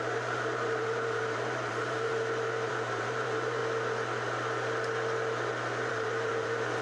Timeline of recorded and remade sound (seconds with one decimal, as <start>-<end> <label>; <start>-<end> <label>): 0.0-2.1 remade; 2.1-2.7 recorded; 2.7-3.6 remade; 3.6-5.9 recorded; 5.9-6.8 remade